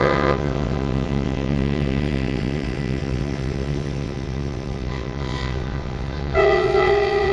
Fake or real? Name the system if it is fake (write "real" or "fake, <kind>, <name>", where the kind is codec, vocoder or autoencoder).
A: fake, vocoder, WaveNeXt